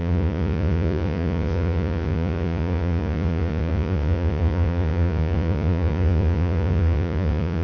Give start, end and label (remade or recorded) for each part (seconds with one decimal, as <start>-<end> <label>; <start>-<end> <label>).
0.0-7.6 remade